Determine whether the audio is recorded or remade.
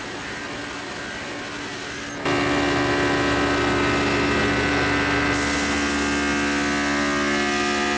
recorded